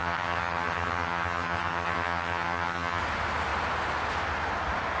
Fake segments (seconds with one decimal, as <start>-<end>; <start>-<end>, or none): 0.0-3.0